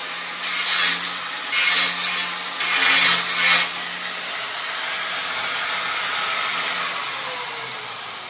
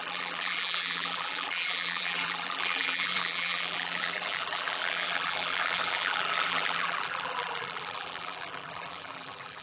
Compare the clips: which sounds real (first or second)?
first